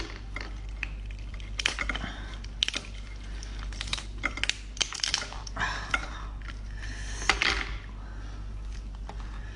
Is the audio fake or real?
real